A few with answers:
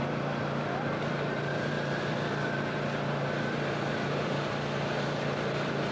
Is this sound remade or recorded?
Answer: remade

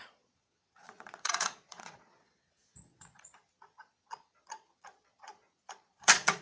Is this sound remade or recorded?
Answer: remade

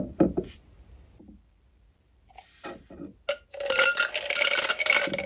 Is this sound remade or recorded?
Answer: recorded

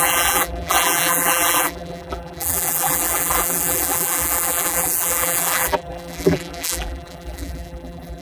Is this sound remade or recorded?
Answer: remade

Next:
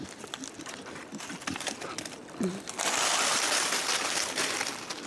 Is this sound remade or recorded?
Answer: recorded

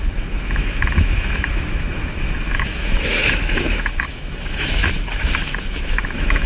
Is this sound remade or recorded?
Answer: remade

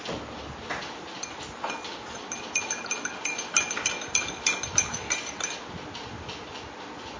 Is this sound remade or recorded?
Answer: recorded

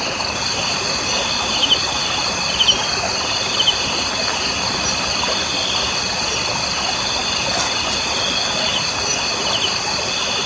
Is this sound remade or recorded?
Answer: recorded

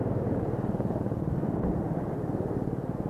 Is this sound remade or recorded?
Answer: recorded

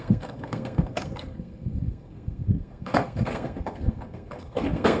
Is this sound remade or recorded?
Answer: remade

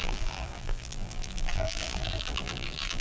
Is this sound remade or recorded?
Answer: remade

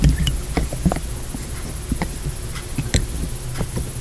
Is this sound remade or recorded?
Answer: recorded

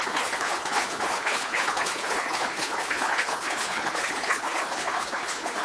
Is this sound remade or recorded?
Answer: remade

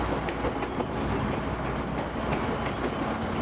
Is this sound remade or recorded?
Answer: recorded